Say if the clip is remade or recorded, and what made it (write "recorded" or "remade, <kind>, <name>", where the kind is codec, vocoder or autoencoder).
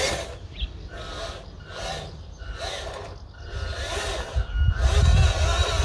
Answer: recorded